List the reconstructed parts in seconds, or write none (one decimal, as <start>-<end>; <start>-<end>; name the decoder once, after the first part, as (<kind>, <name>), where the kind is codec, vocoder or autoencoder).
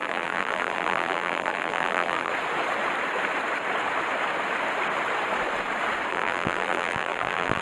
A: 0.0-2.3 (vocoder, BigVGAN v2); 6.1-7.6